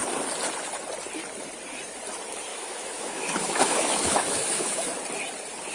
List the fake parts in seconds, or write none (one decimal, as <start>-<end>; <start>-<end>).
2.5-4.9